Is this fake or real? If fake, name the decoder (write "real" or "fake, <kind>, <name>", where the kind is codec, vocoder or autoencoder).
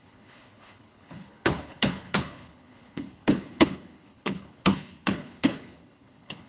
fake, codec, HILCodec